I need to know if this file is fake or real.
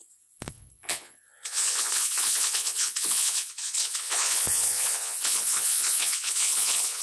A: fake